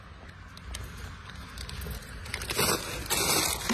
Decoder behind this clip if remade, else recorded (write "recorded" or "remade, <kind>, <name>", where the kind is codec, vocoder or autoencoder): recorded